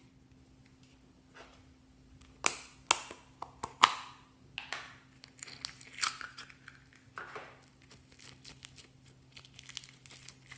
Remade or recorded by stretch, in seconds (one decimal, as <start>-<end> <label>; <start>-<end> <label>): 0.0-10.6 recorded